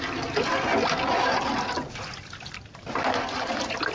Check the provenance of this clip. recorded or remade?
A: recorded